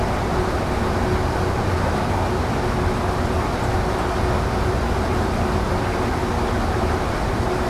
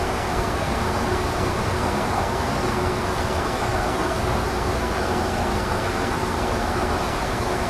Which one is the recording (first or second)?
first